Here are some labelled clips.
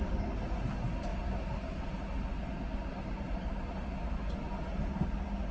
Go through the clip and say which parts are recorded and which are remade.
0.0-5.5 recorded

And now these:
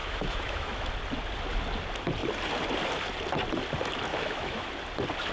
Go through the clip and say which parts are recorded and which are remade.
0.0-0.9 remade; 0.9-4.1 recorded; 4.1-4.7 remade; 4.7-5.3 recorded

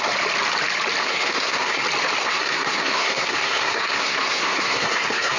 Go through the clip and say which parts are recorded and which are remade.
0.0-1.0 recorded; 1.0-1.8 remade; 1.8-2.2 recorded; 2.2-5.4 remade